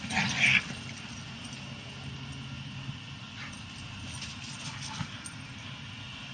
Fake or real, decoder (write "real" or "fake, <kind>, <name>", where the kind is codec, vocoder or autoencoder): real